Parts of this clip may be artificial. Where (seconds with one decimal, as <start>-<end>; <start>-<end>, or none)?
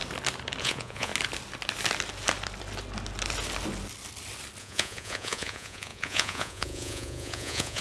0.6-1.1; 4.6-7.8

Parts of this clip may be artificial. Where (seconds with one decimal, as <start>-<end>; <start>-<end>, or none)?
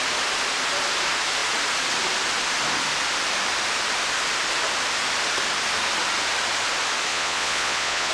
7.1-8.1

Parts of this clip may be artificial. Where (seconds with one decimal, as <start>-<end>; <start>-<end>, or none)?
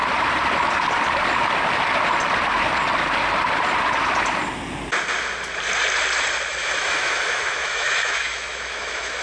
6.5-9.2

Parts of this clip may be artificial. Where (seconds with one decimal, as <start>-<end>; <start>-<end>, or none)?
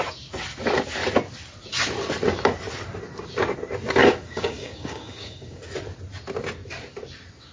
4.0-5.6